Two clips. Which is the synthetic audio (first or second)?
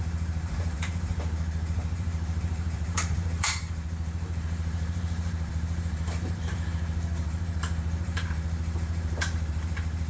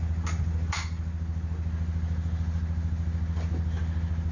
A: first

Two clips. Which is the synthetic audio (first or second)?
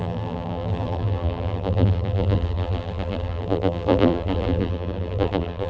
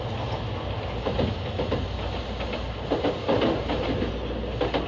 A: first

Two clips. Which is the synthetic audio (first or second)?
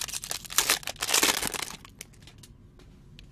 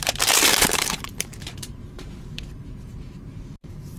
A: second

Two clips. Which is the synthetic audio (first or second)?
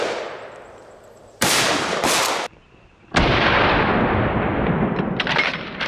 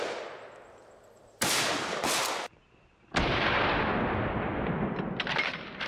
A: first